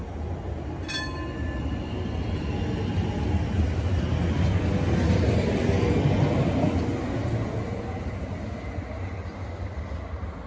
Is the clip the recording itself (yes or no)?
yes